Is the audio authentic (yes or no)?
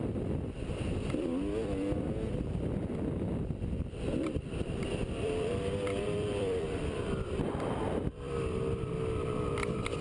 no